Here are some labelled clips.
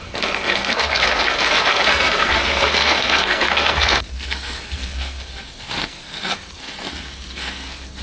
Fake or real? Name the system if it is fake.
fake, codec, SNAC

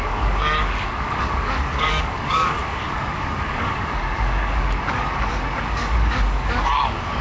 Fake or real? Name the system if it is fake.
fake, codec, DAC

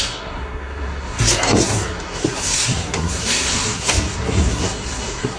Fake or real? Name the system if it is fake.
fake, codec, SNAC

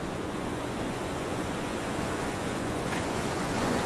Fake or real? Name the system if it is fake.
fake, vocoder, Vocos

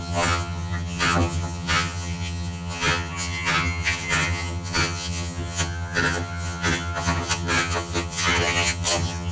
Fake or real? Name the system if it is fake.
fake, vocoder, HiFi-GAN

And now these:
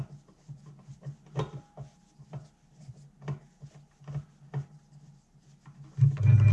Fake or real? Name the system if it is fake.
real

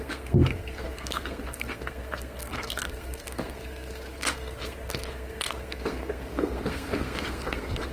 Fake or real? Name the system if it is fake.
fake, codec, SNAC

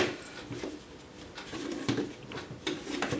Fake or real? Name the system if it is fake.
real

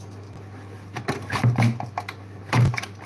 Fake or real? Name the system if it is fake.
real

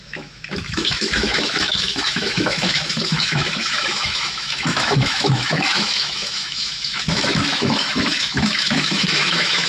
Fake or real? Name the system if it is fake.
fake, autoencoder, DAC-VAE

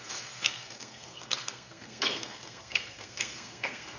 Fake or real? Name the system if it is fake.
fake, codec, SNAC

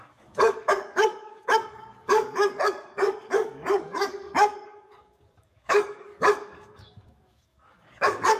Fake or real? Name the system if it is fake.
fake, codec, DAC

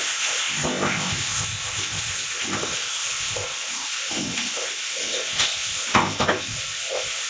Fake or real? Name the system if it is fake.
fake, codec, ZipCodec